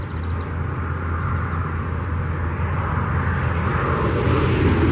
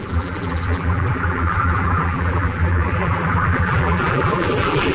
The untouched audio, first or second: first